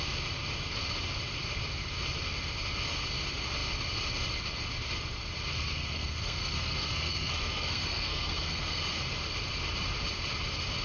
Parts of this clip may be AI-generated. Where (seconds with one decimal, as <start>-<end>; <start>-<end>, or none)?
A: 5.5-8.8